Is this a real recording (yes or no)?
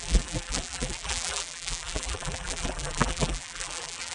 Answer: no